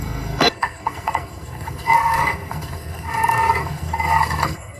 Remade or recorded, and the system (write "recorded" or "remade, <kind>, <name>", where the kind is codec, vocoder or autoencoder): remade, codec, SNAC